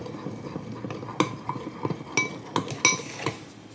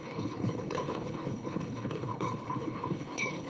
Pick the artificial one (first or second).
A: second